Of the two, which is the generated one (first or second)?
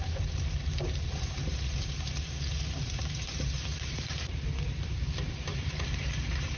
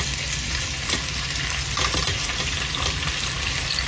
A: first